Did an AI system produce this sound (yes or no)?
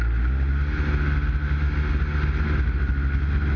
no